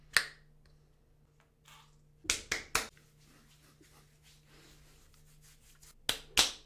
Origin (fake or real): real